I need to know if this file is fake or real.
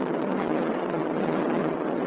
fake